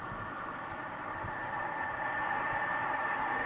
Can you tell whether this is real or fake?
real